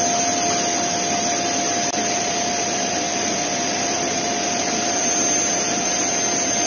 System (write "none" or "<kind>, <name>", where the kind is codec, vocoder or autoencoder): none